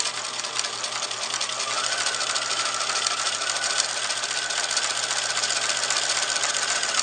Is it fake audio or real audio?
real